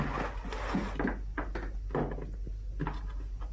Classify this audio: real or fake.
real